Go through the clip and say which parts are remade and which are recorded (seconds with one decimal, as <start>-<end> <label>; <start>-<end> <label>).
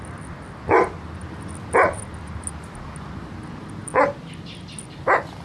0.0-5.4 recorded